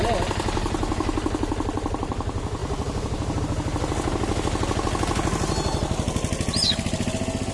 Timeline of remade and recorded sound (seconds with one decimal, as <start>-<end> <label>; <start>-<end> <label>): 0.0-7.5 recorded